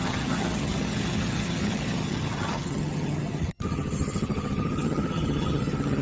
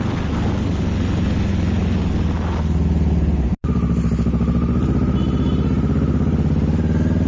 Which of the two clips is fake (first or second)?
first